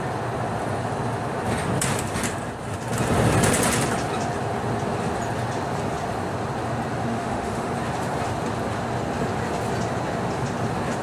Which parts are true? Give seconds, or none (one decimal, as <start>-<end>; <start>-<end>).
0.0-7.1; 7.7-11.0